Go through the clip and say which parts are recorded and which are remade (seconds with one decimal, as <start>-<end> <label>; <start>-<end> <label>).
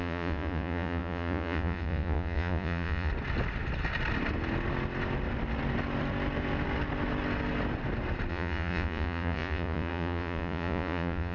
0.0-3.1 remade; 3.1-8.3 recorded; 8.3-11.3 remade